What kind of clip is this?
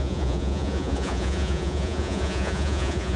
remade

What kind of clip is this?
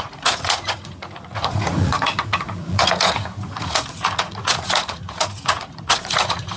remade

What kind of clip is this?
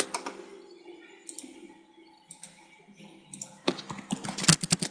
recorded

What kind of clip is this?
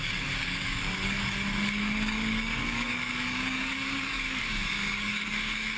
remade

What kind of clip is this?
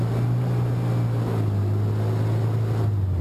recorded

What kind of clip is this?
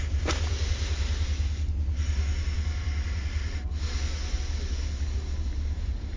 recorded